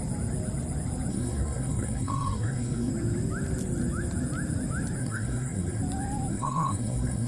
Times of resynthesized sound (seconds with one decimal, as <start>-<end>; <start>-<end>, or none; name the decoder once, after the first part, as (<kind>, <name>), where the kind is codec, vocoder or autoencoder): 1.1-2.9 (codec, SNAC); 5.0-5.8; 6.3-7.3